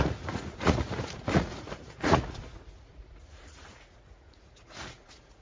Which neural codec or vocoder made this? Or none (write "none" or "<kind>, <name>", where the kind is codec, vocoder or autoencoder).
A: vocoder, Vocos